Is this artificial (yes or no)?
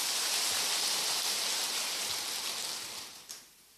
yes